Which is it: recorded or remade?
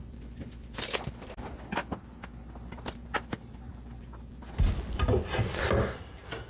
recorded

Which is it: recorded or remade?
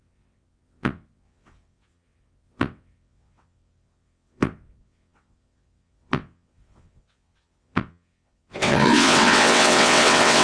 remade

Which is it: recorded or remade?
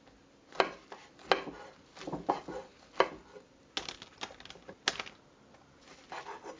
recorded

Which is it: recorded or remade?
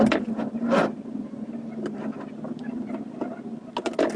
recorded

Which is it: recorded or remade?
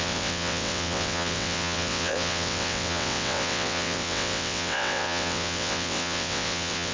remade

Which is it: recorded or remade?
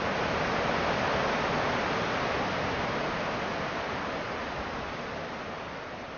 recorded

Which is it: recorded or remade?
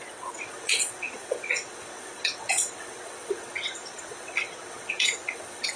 remade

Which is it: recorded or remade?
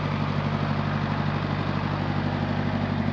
recorded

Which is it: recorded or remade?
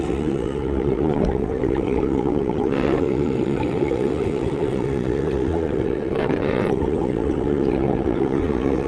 remade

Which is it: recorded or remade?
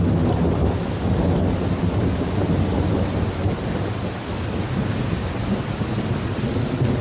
recorded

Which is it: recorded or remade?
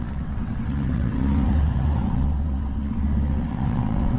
remade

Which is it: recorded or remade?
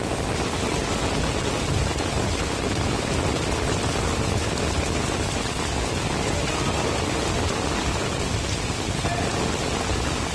recorded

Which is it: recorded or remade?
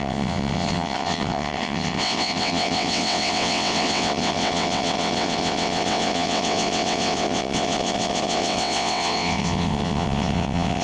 remade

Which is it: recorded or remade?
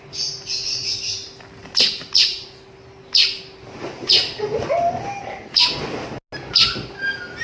recorded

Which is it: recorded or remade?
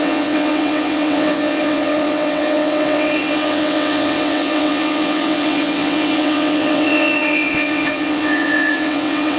remade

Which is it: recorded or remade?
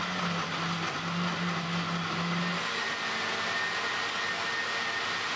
recorded